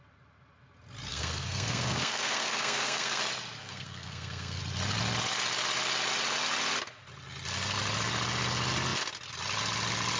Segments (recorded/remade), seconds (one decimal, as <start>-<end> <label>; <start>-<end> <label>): 0.0-1.1 recorded; 1.1-3.2 remade; 3.2-3.6 recorded; 3.6-4.6 remade; 4.6-10.2 recorded